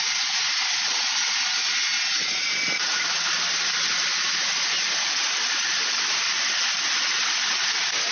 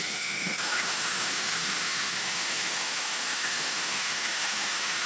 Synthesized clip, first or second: second